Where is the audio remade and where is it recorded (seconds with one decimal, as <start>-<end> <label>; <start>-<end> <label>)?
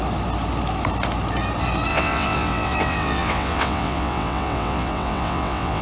0.0-1.9 recorded; 1.9-5.8 remade